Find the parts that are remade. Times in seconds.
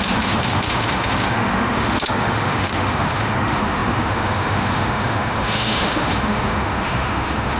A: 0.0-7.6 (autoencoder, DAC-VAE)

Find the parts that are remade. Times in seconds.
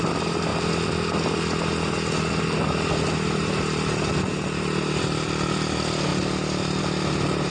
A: none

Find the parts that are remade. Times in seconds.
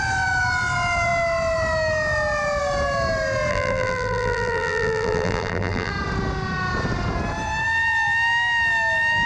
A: 3.5-5.9 (vocoder, BigVGAN v2)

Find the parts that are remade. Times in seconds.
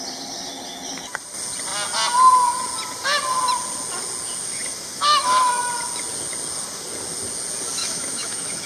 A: 4.4-5.7 (autoencoder, DAC-VAE); 7.8-8.7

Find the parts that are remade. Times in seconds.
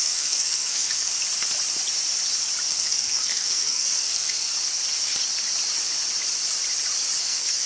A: 0.0-1.1 (codec, SNAC); 2.7-4.5; 7.2-7.7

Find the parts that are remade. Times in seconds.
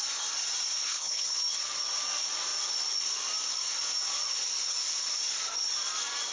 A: 0.8-1.4 (codec, HILCodec)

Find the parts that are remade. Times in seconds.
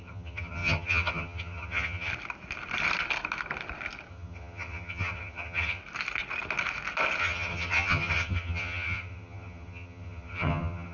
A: 0.0-2.1 (vocoder, HiFi-GAN); 4.1-5.8; 7.2-10.9